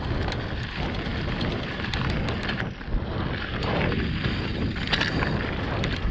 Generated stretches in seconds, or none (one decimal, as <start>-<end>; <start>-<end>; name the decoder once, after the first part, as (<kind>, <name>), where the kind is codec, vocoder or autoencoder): none